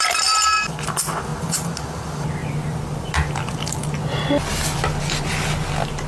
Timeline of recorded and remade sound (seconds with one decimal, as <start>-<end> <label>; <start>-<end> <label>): 0.0-6.1 recorded